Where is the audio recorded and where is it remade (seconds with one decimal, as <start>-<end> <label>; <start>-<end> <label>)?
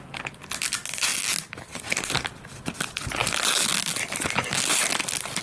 0.0-5.4 recorded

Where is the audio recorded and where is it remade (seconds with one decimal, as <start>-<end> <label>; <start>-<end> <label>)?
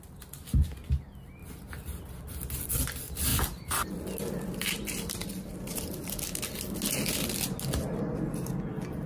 0.0-3.3 recorded; 3.3-3.9 remade; 3.9-9.1 recorded